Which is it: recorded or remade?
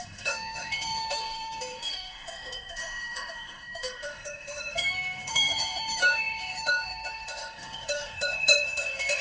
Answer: remade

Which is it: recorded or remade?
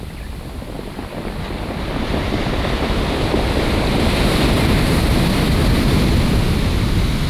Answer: recorded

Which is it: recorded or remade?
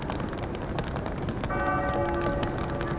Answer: recorded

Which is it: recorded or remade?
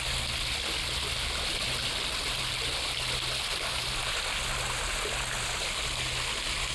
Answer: recorded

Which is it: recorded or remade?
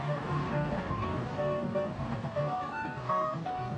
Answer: remade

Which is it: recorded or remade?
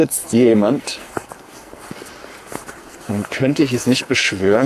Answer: remade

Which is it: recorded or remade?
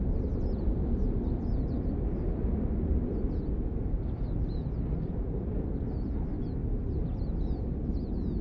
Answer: recorded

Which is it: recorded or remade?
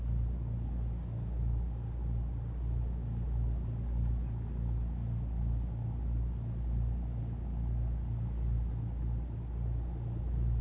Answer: recorded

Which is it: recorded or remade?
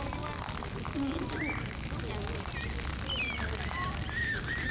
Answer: recorded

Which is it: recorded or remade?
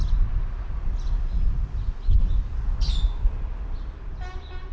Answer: recorded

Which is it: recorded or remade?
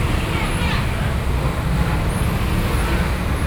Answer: recorded